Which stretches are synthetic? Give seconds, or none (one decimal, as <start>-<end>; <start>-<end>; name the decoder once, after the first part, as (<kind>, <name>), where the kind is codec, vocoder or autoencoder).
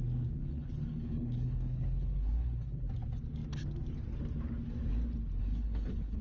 0.4-2.9 (codec, HILCodec); 5.4-6.2